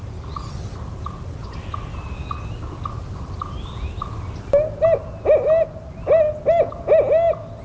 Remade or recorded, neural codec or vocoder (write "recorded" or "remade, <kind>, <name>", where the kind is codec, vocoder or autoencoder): recorded